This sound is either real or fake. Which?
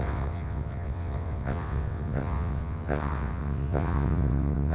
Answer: fake